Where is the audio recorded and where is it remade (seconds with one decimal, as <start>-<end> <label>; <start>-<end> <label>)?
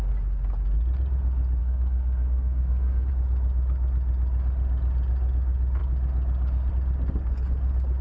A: 0.0-1.6 recorded; 1.6-3.1 remade; 3.1-8.0 recorded